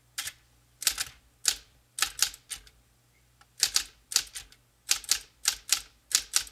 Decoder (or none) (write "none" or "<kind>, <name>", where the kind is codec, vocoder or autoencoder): none